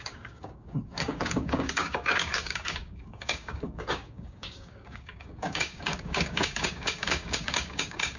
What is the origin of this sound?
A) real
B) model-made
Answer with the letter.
B